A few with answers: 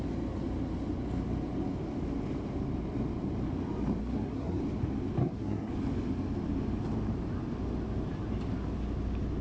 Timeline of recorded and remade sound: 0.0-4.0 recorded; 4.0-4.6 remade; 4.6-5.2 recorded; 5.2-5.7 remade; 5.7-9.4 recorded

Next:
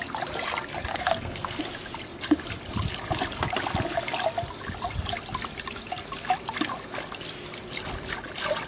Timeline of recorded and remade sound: 0.0-0.9 recorded; 0.9-1.6 remade; 1.6-8.7 recorded